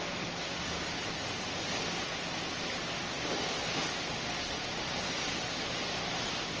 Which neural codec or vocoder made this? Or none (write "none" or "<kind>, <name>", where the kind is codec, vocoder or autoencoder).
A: none